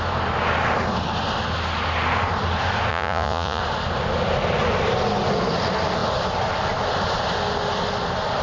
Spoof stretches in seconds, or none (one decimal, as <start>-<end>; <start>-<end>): 2.9-3.6